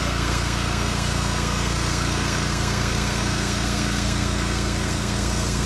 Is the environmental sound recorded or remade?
remade